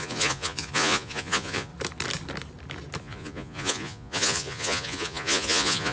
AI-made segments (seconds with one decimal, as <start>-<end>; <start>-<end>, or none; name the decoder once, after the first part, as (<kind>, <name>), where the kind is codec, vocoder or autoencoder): 0.0-1.7 (vocoder, Vocos); 3.0-5.9